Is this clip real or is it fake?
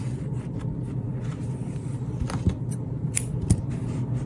fake